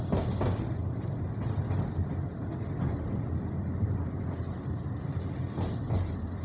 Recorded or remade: recorded